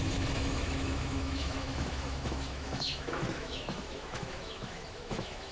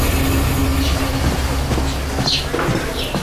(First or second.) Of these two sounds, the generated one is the first